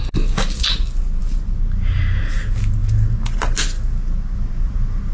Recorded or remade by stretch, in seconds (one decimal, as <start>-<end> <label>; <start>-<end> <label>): 0.0-5.1 recorded